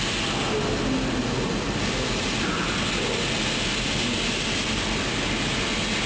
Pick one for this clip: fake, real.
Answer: real